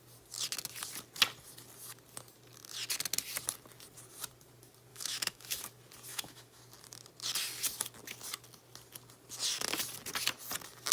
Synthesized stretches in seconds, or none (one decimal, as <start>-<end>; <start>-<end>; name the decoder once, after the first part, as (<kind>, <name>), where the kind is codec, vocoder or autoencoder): 4.9-5.6 (autoencoder, DAC-VAE); 6.1-6.6